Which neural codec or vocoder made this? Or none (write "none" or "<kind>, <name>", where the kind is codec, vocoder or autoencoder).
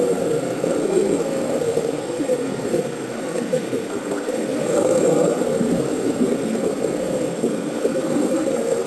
codec, SNAC